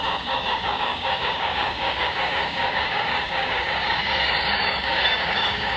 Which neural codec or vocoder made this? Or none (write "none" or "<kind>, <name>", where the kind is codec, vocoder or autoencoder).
codec, DAC